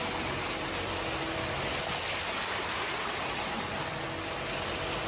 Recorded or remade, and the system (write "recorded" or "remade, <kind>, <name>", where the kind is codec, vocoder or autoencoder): recorded